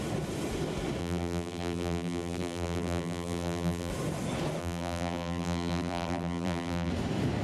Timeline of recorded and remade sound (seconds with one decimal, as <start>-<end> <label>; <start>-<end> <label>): 0.0-1.0 recorded; 1.0-3.9 remade; 3.9-4.6 recorded; 4.6-6.9 remade; 6.9-7.4 recorded